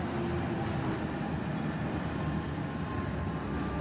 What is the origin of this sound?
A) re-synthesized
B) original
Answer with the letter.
B